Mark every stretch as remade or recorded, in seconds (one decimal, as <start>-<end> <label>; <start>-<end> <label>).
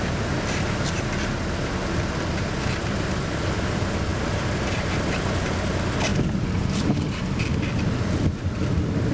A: 0.0-9.1 recorded